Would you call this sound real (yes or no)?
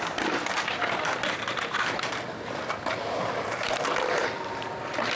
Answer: no